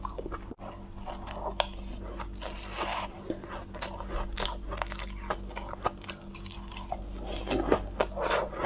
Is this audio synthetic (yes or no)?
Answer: no